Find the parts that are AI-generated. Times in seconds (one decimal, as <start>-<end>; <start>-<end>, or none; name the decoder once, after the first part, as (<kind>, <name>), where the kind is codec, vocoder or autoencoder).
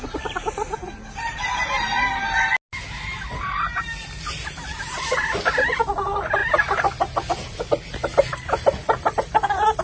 none